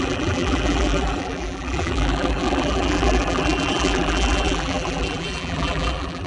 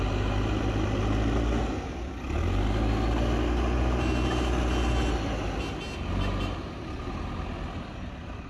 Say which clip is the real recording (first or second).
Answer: second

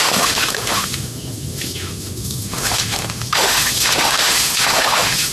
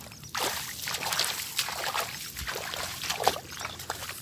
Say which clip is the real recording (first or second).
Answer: second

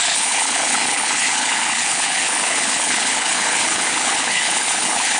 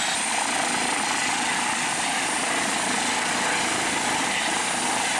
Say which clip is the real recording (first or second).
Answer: second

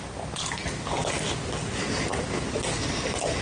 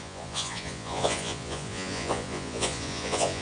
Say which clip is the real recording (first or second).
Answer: first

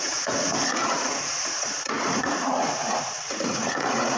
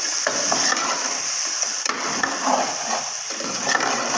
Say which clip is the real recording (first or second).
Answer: second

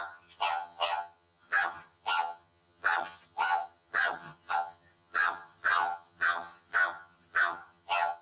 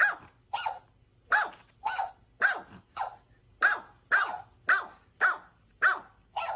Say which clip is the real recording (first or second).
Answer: second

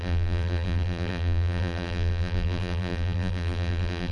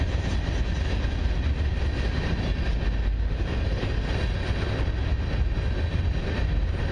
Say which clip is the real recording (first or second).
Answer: second